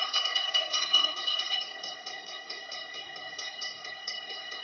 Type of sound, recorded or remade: remade